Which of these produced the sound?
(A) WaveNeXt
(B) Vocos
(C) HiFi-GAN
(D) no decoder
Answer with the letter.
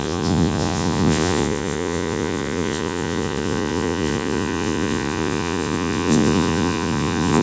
B